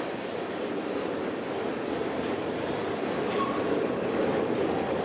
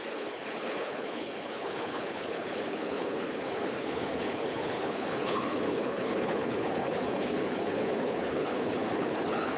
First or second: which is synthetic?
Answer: second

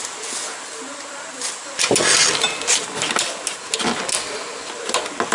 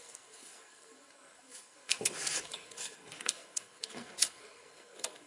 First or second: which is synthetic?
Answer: second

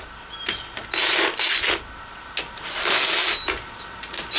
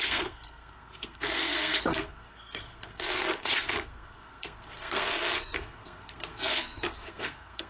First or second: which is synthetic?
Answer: second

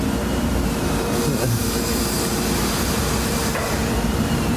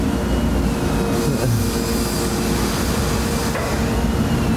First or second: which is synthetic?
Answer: first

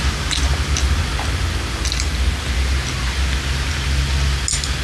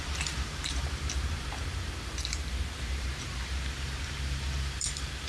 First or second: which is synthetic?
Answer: second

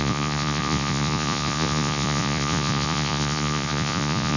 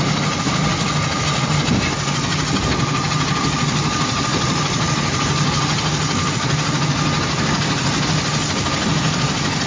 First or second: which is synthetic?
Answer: first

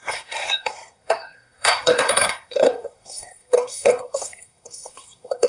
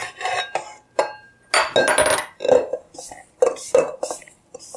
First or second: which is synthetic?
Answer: first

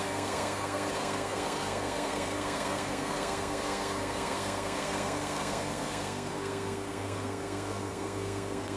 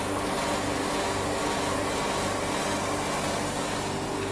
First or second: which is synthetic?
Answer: first